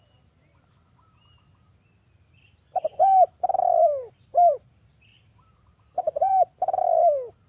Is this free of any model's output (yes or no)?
no